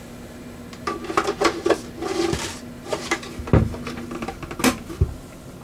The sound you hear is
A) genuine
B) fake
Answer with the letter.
A